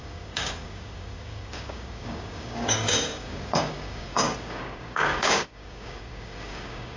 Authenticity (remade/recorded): remade